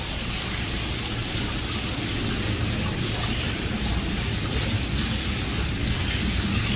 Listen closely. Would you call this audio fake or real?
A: real